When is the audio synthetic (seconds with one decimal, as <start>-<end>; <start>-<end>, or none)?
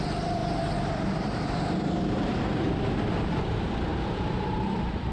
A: 0.4-3.4; 3.9-5.1